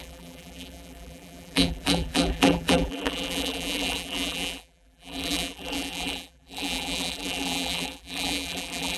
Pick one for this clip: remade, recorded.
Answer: remade